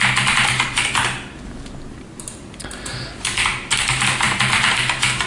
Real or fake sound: real